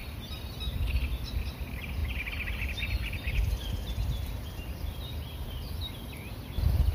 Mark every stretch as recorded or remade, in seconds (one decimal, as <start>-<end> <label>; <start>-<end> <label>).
0.0-1.4 remade; 1.4-2.0 recorded; 2.0-5.8 remade; 5.8-6.9 recorded